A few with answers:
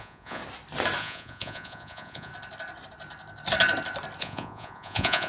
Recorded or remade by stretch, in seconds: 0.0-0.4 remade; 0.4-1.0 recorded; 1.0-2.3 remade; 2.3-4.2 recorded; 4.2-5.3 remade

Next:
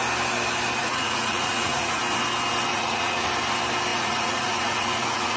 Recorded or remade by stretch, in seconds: 0.0-0.8 recorded; 0.8-2.0 remade; 2.0-2.7 recorded; 2.7-3.3 remade; 3.3-3.9 recorded; 3.9-5.4 remade

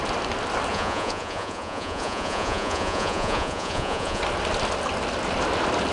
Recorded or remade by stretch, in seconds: 0.0-0.7 recorded; 0.7-4.2 remade; 4.2-5.9 recorded

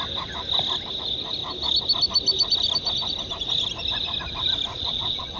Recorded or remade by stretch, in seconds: 0.0-4.7 recorded; 4.7-5.4 remade

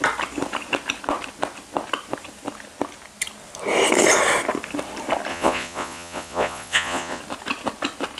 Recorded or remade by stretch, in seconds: 0.0-5.3 recorded; 5.3-7.2 remade; 7.2-8.2 recorded

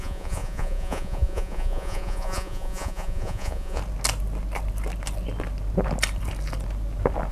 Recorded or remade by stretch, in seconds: 0.0-3.8 remade; 3.8-7.3 recorded

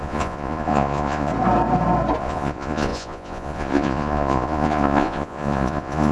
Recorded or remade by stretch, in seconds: 0.0-1.3 remade; 1.3-2.2 recorded; 2.2-6.1 remade